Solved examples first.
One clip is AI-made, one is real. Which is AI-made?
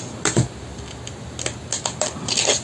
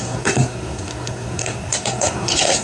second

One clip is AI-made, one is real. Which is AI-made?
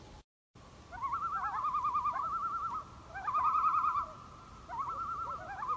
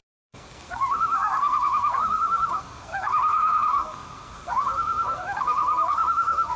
second